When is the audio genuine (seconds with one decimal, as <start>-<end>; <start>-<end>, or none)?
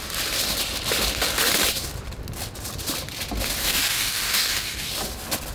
0.0-3.6; 4.9-5.5